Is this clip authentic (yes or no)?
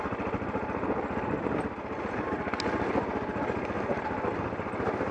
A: yes